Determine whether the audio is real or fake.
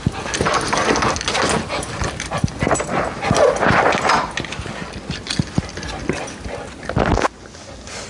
real